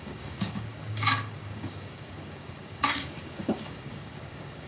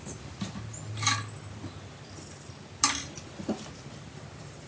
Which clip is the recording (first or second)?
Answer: second